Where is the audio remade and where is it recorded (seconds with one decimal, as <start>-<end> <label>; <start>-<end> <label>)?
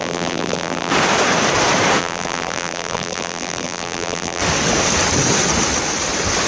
0.0-0.9 remade; 0.9-2.0 recorded; 2.0-4.4 remade; 4.4-6.5 recorded